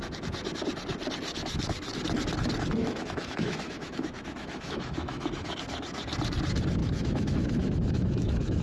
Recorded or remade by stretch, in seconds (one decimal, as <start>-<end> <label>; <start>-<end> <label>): 0.0-2.8 recorded; 2.8-5.5 remade; 5.5-6.8 recorded; 6.8-8.6 remade